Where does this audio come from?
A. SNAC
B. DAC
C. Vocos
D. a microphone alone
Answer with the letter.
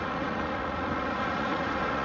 C